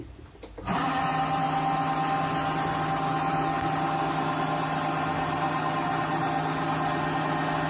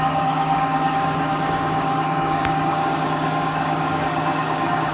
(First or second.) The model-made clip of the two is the second